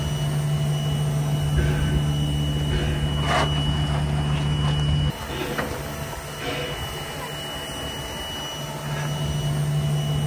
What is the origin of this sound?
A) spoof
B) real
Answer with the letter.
B